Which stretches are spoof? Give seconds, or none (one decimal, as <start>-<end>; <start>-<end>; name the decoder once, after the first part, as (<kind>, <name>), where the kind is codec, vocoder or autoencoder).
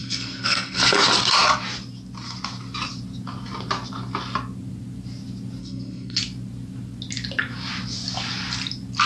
0.0-0.8 (codec, SNAC); 5.6-6.2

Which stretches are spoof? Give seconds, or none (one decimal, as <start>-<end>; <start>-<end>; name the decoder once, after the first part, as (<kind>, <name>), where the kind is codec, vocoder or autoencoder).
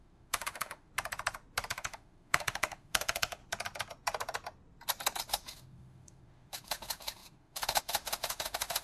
0.0-0.9 (autoencoder, DAC-VAE); 1.7-3.4; 5.3-8.8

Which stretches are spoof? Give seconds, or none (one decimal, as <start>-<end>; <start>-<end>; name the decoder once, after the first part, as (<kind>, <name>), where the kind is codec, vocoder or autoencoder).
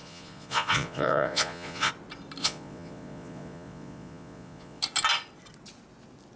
0.0-1.9 (vocoder, Vocos); 2.4-4.8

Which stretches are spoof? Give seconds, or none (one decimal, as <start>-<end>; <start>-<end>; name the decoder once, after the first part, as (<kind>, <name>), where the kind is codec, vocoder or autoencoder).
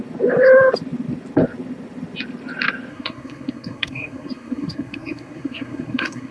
2.9-6.3 (codec, SNAC)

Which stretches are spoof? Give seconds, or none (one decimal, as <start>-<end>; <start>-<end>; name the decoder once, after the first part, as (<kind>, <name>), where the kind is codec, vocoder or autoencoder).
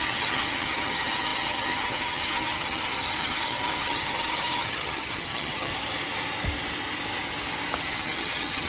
0.0-5.7 (vocoder, HiFi-GAN); 7.8-8.7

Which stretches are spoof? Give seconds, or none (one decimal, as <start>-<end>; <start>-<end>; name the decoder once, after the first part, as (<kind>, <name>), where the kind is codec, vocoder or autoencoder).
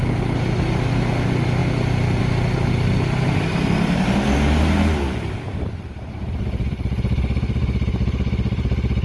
none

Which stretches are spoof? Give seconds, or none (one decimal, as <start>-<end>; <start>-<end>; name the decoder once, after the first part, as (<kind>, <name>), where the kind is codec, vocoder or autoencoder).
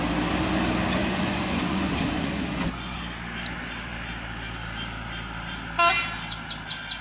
1.0-3.0 (vocoder, Vocos)